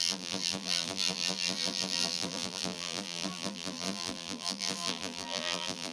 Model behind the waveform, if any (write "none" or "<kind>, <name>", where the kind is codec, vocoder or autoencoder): vocoder, BigVGAN v2